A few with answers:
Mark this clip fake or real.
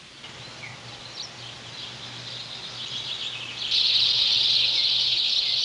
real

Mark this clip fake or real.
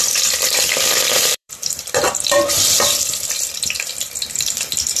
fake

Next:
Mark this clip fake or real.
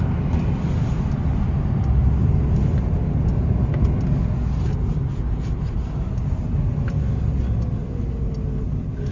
real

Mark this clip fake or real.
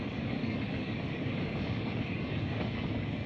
fake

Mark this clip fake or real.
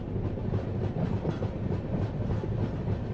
real